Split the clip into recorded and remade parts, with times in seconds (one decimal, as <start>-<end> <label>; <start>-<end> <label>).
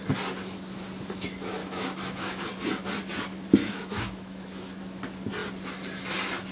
0.0-1.6 recorded; 1.6-2.4 remade; 2.4-3.6 recorded; 3.6-4.8 remade; 4.8-6.5 recorded